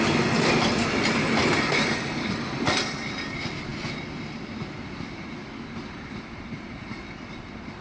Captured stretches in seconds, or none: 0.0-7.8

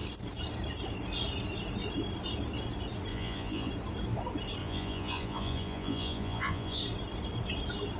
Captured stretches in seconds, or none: 0.0-3.1; 3.7-4.6; 6.8-8.0